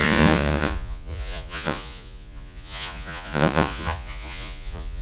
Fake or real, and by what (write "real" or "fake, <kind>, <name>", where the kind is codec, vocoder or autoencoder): fake, vocoder, Vocos